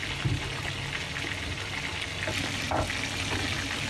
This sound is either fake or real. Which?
real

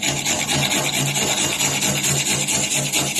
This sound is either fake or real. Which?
real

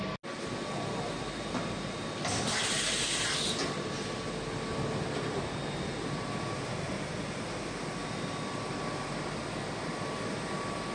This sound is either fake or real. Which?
real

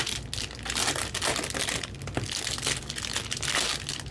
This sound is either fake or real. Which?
real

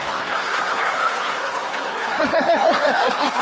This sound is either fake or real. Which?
fake